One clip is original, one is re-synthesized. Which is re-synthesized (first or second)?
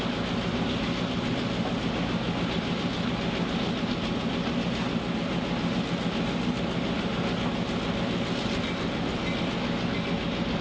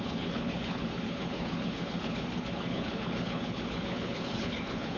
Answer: second